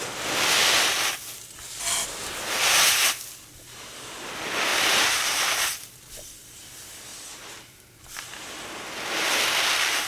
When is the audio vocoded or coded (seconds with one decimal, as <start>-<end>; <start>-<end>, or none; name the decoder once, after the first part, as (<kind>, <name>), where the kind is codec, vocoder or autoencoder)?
4.7-5.4 (vocoder, BigVGAN v2); 7.1-7.8